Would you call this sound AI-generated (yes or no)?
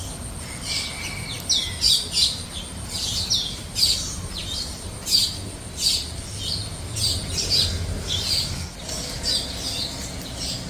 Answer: no